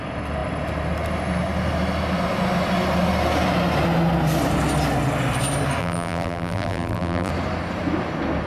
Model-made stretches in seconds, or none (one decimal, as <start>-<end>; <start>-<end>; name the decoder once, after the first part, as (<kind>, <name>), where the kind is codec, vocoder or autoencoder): 5.8-7.3 (vocoder, BigVGAN v2)